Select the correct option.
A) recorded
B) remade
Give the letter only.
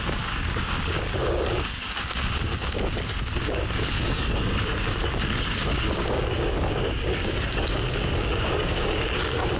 B